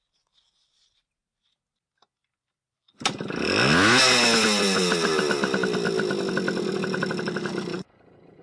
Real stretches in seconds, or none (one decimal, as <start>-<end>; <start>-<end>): 0.0-7.7